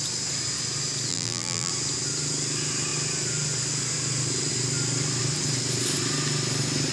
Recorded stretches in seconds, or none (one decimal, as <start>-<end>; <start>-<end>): 0.0-1.1; 1.7-6.9